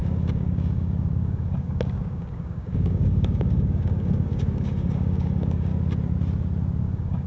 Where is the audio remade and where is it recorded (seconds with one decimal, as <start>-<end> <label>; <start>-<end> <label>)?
0.0-5.7 remade; 5.7-6.8 recorded; 6.8-7.3 remade